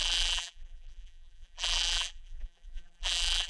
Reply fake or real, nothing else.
fake